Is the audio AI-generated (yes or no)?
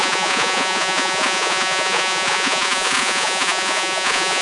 yes